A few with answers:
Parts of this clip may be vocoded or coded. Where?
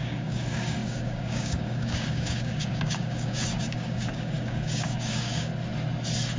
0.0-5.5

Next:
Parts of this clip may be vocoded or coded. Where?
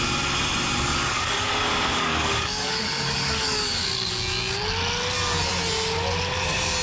0.9-1.5; 1.9-4.1